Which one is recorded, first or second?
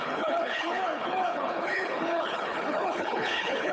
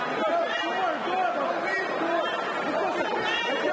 second